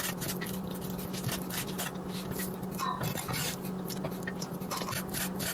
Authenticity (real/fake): real